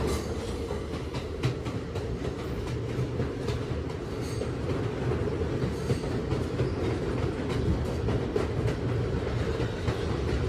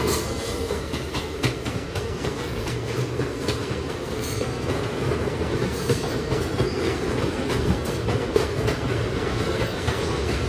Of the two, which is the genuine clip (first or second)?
first